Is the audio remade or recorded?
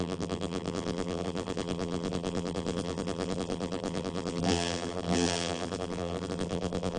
remade